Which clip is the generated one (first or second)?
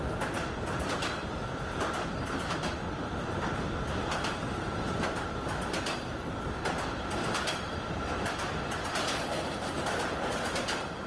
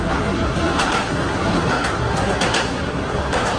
second